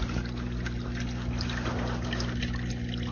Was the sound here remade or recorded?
recorded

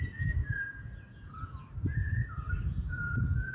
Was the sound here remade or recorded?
remade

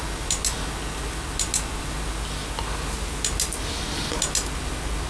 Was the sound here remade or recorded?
recorded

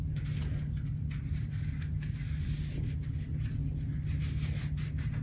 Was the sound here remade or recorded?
recorded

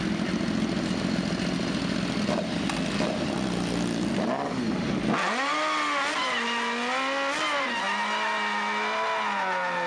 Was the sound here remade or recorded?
recorded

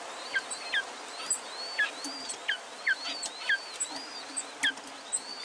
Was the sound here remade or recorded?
recorded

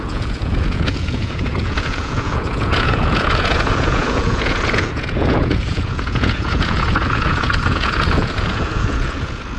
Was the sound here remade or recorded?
remade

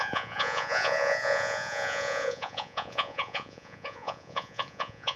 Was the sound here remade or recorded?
remade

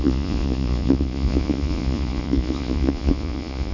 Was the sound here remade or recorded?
remade